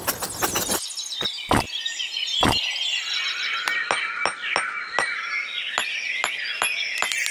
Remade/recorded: recorded